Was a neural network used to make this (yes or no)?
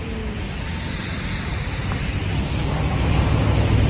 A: no